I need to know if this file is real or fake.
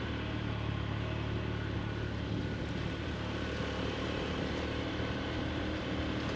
fake